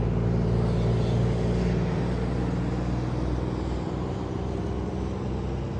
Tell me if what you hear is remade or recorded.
recorded